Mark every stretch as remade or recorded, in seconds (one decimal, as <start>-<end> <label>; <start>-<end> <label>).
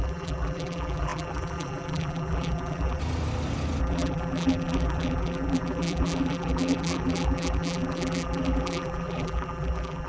0.0-3.0 remade; 3.0-3.8 recorded; 3.8-10.1 remade